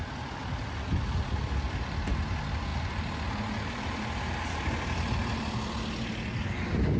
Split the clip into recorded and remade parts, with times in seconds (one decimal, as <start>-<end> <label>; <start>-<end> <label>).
0.0-7.0 recorded